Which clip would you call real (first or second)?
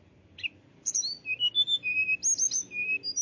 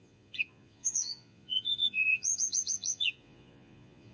first